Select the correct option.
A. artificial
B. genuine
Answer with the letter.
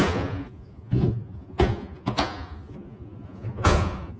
A